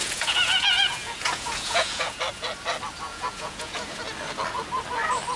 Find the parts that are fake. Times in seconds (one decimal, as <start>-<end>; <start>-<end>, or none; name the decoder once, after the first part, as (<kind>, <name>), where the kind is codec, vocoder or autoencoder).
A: 0.0-2.2 (vocoder, Vocos); 3.1-4.0